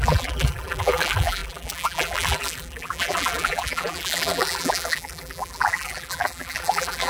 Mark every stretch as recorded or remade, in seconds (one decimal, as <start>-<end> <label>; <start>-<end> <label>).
0.0-7.1 remade